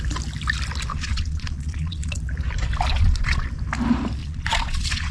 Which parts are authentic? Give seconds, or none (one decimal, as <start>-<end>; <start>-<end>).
0.0-0.9; 2.2-2.9; 3.5-4.2